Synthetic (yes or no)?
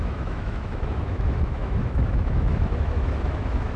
yes